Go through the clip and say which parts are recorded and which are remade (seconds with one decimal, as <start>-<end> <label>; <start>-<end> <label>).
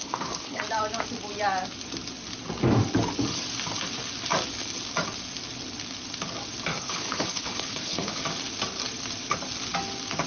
0.0-0.6 remade; 0.6-6.7 recorded; 6.7-8.2 remade; 8.2-10.3 recorded